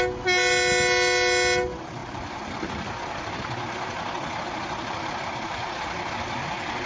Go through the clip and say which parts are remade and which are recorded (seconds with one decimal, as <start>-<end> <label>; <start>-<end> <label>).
0.0-6.9 recorded